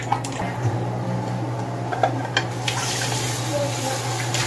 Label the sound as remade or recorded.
recorded